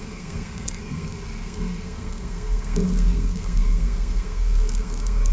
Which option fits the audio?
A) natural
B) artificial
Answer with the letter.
B